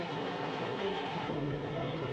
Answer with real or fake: fake